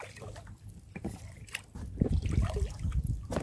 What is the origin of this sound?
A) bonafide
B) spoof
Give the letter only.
B